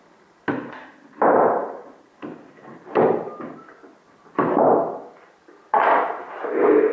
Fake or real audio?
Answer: real